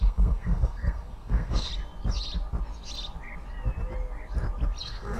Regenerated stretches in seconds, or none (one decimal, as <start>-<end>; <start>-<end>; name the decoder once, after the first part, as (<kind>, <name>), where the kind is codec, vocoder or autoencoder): 0.0-1.7 (codec, SNAC); 4.8-5.2